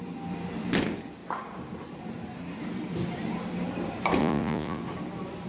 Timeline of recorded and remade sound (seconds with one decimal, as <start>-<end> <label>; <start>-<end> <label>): 0.0-4.2 recorded; 4.2-4.8 remade; 4.8-5.5 recorded